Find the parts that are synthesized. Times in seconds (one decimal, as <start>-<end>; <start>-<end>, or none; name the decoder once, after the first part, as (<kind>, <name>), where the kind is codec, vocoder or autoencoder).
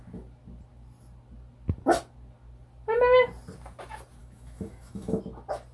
4.2-5.2 (autoencoder, DAC-VAE)